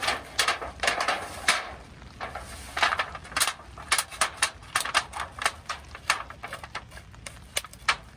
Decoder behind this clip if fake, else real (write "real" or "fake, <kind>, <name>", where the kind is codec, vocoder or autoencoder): real